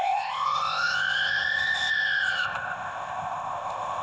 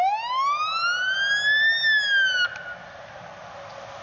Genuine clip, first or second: second